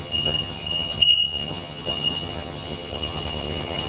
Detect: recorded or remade remade